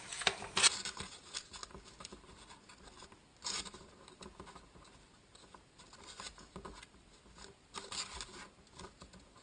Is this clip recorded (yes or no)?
yes